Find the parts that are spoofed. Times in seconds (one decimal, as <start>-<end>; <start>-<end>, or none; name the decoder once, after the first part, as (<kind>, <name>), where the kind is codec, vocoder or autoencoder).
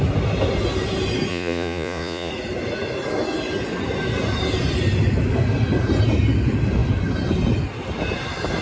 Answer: 1.3-2.3 (vocoder, Vocos)